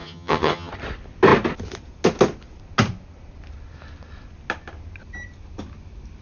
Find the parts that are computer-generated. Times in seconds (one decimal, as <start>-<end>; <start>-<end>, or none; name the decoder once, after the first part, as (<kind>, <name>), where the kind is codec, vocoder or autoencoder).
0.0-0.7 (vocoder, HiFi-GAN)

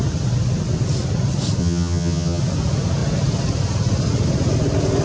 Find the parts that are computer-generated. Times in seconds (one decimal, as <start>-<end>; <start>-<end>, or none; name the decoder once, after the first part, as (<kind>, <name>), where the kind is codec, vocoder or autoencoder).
1.6-2.4 (vocoder, HiFi-GAN)

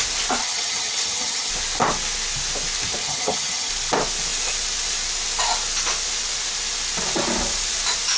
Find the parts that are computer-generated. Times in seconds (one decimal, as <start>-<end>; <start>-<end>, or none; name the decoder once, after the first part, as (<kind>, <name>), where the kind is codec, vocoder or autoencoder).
0.4-1.5 (vocoder, HiFi-GAN); 3.0-3.7